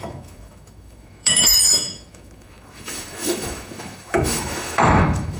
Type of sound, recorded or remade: remade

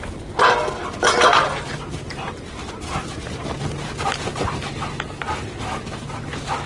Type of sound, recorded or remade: recorded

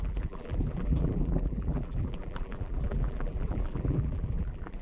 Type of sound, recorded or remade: remade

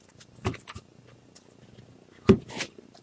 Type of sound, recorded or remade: recorded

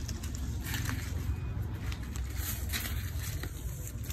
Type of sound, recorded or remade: recorded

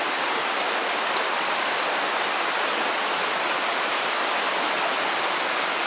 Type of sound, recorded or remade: recorded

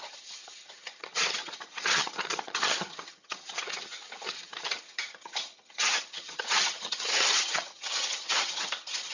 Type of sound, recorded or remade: remade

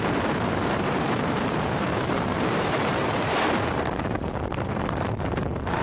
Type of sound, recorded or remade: remade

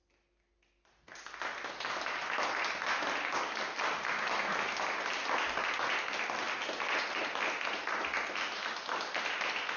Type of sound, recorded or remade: recorded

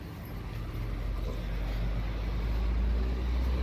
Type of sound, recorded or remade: recorded